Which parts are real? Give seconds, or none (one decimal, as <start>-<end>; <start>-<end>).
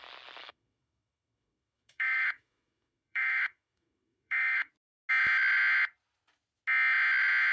0.0-0.4; 4.7-7.5